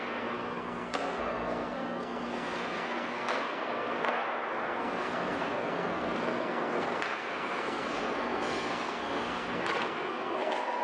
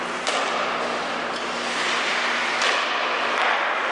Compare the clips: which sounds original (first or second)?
second